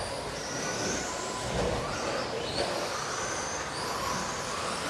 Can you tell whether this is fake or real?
real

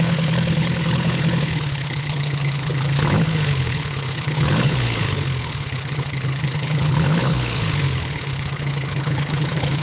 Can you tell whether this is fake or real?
fake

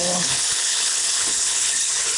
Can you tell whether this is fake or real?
fake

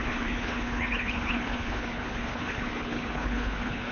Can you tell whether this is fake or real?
fake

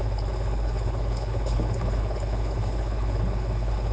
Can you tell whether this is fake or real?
fake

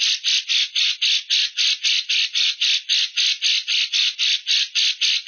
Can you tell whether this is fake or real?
real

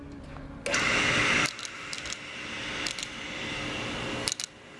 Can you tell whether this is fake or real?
real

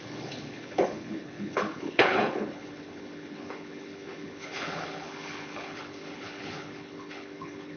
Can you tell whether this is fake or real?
fake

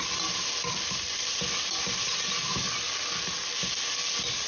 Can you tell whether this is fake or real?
real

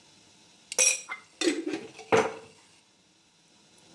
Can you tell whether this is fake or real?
real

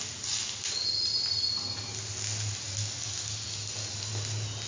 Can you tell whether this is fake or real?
real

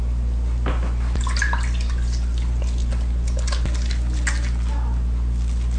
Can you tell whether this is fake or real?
real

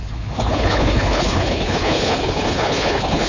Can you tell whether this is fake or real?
fake